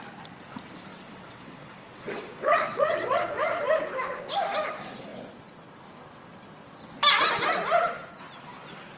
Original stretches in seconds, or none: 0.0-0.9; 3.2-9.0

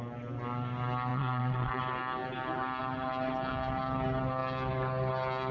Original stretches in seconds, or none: 0.0-1.1; 1.8-5.5

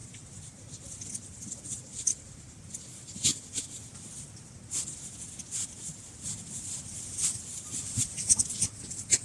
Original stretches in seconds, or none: 0.6-9.2